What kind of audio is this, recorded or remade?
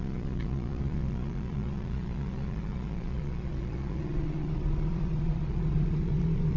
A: remade